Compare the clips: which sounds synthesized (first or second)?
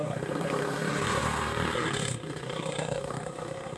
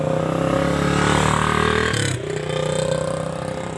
first